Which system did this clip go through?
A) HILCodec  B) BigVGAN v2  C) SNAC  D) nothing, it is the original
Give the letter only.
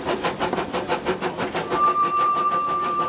B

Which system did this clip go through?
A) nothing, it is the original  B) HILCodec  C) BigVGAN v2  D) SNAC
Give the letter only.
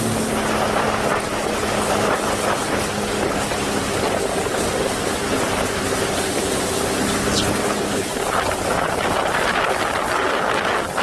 A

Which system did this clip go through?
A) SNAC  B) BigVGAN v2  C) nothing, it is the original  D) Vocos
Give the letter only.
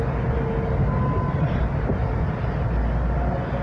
C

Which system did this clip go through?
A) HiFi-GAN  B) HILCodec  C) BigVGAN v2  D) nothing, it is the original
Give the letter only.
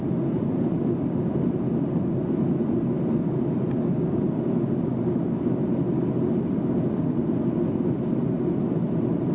D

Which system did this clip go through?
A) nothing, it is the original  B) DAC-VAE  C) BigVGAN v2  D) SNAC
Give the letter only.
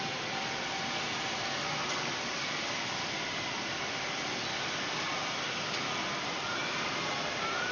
A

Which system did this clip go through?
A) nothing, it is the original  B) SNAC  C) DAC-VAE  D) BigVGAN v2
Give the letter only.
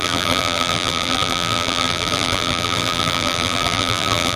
D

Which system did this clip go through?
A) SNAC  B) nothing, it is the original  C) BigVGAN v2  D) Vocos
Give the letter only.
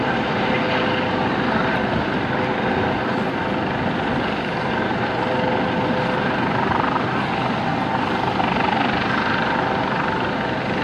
B